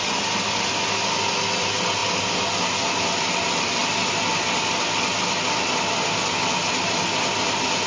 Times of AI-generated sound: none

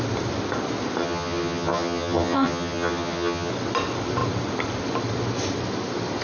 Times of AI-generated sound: 1.0-3.5 (vocoder, HiFi-GAN)